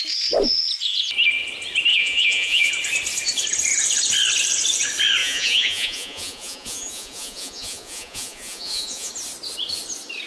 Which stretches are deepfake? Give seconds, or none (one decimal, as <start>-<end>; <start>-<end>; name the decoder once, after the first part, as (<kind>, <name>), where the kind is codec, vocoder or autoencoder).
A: 1.9-2.7 (vocoder, Vocos); 5.2-9.1